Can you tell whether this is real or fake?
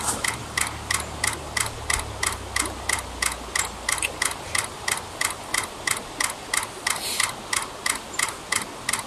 real